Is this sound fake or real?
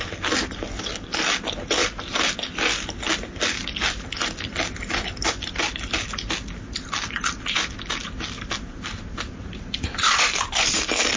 real